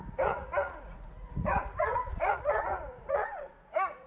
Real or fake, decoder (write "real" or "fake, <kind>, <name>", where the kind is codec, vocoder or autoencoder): fake, vocoder, Vocos